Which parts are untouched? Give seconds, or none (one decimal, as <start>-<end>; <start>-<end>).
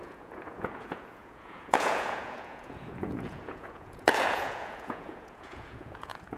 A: none